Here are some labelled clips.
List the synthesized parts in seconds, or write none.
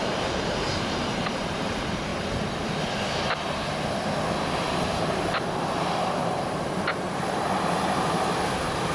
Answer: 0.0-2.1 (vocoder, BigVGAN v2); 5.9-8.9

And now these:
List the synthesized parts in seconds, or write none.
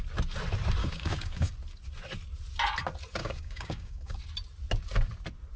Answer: 0.8-1.5 (codec, DAC); 3.2-4.2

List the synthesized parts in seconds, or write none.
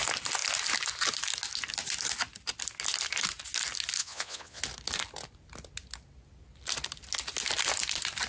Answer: 4.0-4.6 (vocoder, Vocos)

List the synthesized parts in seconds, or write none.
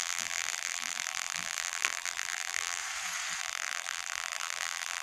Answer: 0.0-2.8 (vocoder, BigVGAN v2); 3.4-5.0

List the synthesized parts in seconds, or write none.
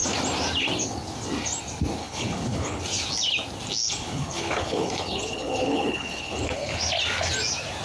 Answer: 2.0-2.8 (codec, HILCodec); 3.8-6.8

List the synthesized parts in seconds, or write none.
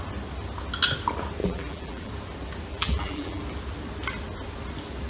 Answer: 1.4-2.1 (vocoder, BigVGAN v2); 2.7-3.4